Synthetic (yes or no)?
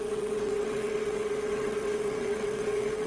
yes